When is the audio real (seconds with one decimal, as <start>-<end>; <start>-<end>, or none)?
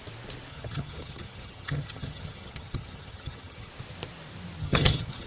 0.0-0.5; 3.7-4.6